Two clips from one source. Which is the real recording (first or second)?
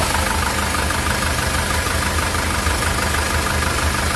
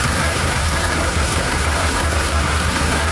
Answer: first